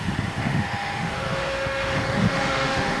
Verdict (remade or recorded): remade